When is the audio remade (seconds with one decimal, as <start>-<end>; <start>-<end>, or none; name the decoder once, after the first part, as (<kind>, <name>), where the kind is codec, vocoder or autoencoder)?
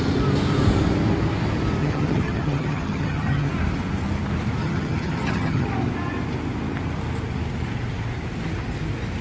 1.8-3.5 (vocoder, HiFi-GAN); 4.6-5.7